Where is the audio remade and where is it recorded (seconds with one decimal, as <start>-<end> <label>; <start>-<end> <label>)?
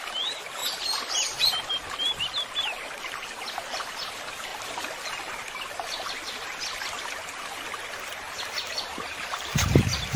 0.0-0.6 recorded; 0.6-1.5 remade; 1.5-10.2 recorded